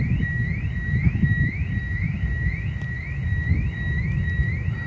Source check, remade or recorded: recorded